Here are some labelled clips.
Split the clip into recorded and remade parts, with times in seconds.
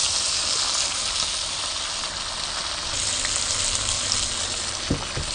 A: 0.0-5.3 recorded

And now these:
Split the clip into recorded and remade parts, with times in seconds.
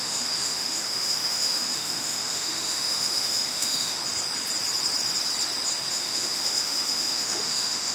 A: 0.0-4.0 remade; 4.0-5.9 recorded; 5.9-7.9 remade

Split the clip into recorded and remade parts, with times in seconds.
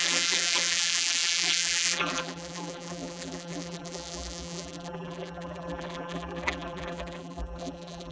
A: 0.0-8.1 remade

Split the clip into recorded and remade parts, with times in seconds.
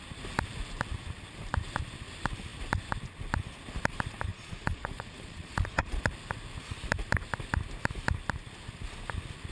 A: 0.0-4.3 recorded; 4.3-6.1 remade; 6.1-9.5 recorded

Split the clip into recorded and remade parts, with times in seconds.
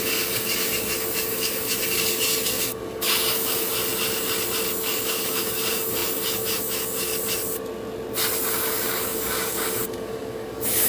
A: 0.0-3.7 remade; 3.7-4.7 recorded; 4.7-7.1 remade; 7.1-8.5 recorded; 8.5-10.9 remade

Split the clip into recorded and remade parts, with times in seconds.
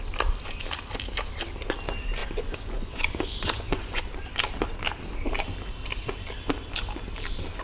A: 0.0-2.2 recorded; 2.2-4.0 remade; 4.0-7.6 recorded